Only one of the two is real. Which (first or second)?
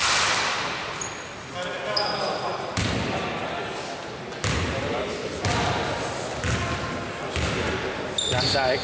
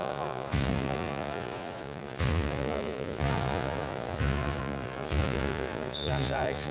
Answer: first